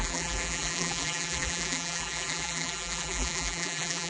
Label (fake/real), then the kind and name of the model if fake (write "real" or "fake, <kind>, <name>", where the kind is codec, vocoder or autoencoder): fake, vocoder, BigVGAN v2